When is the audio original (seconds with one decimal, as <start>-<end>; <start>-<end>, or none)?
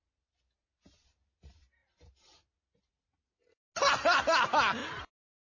0.0-5.5